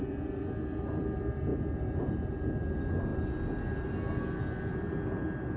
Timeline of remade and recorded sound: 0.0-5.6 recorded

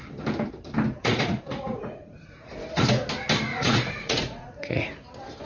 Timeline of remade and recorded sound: 0.0-0.9 recorded; 0.9-2.9 remade; 2.9-3.5 recorded; 3.5-4.8 remade; 4.8-5.5 recorded

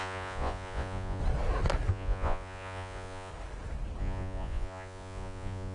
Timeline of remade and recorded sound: 0.0-1.2 remade; 1.2-1.9 recorded; 1.9-3.3 remade; 3.3-4.0 recorded; 4.0-5.7 remade

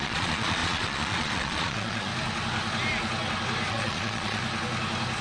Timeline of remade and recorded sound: 0.0-2.1 remade; 2.1-3.7 recorded; 3.7-4.4 remade; 4.4-5.2 recorded

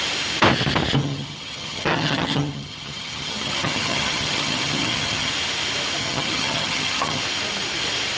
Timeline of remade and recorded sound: 0.0-1.0 recorded; 1.0-5.3 remade; 5.3-6.0 recorded; 6.0-7.2 remade; 7.2-8.2 recorded

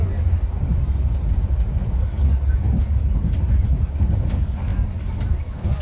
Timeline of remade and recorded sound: 0.0-2.0 recorded; 2.0-3.0 remade; 3.0-4.2 recorded; 4.2-5.8 remade